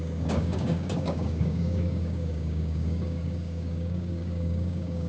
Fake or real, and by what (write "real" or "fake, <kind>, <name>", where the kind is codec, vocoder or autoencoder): fake, codec, DAC